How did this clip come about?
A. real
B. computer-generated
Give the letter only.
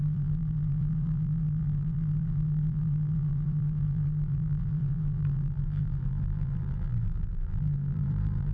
B